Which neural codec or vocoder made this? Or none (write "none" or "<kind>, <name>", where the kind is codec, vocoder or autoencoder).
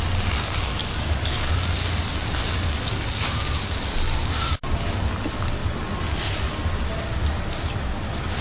none